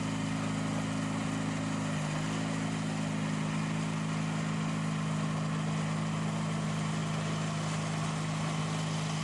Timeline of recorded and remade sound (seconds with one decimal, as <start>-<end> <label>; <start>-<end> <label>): 0.0-9.2 recorded